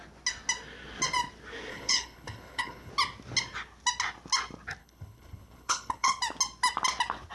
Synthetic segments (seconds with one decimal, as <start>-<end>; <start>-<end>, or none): 1.7-2.9; 4.8-6.2